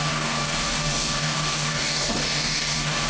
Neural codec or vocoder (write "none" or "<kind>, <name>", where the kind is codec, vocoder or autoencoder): codec, DAC